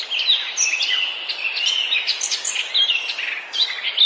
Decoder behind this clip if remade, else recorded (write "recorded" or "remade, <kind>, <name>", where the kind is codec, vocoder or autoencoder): recorded